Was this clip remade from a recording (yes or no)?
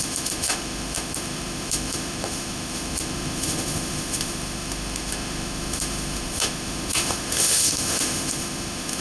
yes